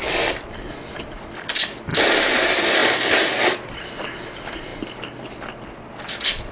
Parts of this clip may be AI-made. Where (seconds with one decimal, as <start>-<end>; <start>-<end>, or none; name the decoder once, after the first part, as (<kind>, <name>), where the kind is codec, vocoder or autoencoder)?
1.9-2.4 (vocoder, BigVGAN v2); 2.8-3.9